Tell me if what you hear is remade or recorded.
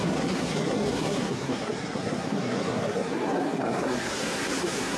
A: remade